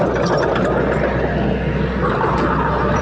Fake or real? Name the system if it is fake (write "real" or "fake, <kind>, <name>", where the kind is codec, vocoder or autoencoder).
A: real